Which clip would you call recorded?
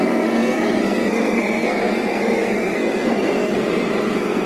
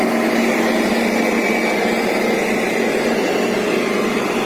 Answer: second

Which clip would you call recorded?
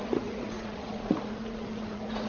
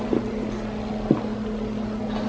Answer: second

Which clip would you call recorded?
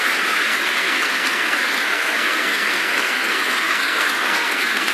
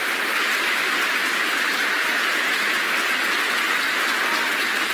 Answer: second